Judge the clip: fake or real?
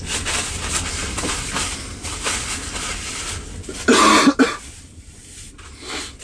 real